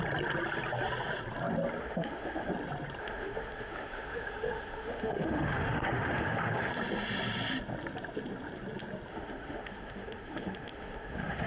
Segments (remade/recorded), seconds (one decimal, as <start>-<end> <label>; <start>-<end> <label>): 0.0-1.8 recorded; 1.8-2.5 remade; 2.5-3.0 recorded; 3.0-6.7 remade; 6.7-9.1 recorded; 9.1-11.5 remade